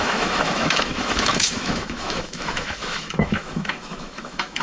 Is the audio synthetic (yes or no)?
yes